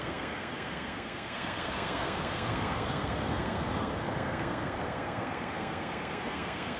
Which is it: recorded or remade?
remade